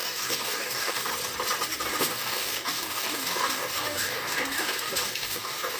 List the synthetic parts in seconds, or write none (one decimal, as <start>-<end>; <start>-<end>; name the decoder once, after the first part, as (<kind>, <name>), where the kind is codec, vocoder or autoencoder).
0.0-1.1 (codec, DAC); 1.9-5.8